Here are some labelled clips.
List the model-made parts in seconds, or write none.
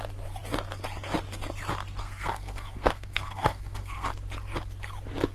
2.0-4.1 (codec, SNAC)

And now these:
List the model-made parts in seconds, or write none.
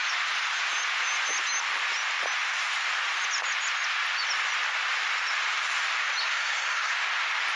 6.2-6.9 (codec, SNAC)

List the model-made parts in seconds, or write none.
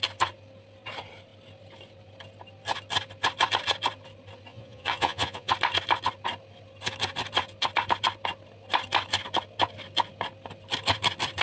4.5-5.5 (vocoder, Vocos)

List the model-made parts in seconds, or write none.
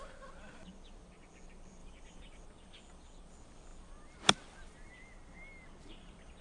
1.8-2.4 (vocoder, BigVGAN v2)